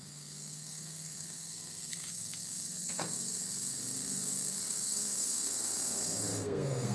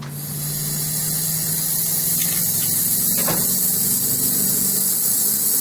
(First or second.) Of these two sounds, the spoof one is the first